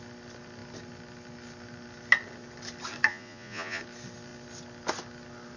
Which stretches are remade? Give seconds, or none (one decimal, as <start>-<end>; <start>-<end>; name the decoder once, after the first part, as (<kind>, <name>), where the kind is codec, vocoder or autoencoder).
3.1-3.8 (vocoder, Vocos)